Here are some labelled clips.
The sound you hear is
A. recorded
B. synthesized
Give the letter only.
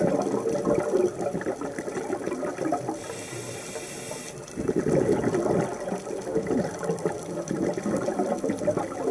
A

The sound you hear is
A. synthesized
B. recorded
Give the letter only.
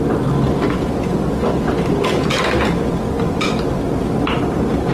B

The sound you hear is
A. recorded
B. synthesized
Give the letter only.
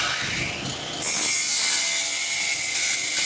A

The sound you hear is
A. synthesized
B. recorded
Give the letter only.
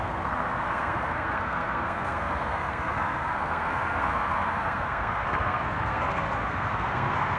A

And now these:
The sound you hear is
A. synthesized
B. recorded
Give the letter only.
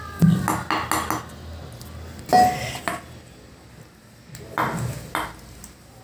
B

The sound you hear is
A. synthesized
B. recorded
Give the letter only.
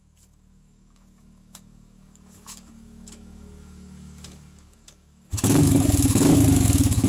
A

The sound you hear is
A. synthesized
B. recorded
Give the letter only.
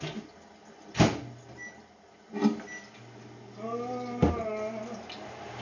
B